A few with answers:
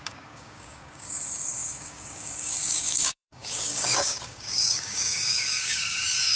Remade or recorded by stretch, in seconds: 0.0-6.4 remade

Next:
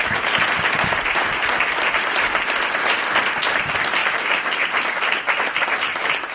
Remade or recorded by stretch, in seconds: 0.0-6.3 recorded

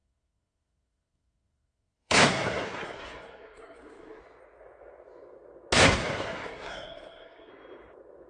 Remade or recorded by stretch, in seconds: 0.0-4.2 remade; 4.2-5.8 recorded; 5.8-7.5 remade; 7.5-8.3 recorded

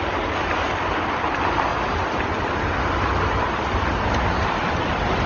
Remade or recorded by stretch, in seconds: 0.0-5.3 recorded